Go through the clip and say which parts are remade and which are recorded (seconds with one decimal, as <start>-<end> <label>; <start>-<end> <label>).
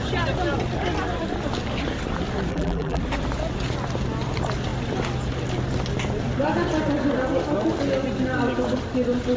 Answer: 0.0-2.5 recorded; 2.5-3.0 remade; 3.0-9.4 recorded